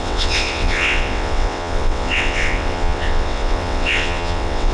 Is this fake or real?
fake